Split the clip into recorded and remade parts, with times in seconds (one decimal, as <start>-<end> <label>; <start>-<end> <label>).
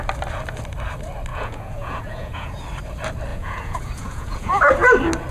0.0-1.3 recorded; 1.3-2.6 remade; 2.6-3.3 recorded; 3.3-4.5 remade; 4.5-5.3 recorded